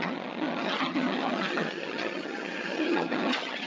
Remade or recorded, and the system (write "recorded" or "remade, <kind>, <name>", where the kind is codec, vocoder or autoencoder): remade, vocoder, HiFi-GAN